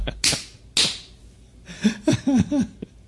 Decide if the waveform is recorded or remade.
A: recorded